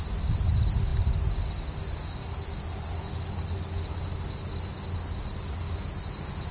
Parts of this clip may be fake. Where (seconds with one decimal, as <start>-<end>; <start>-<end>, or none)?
none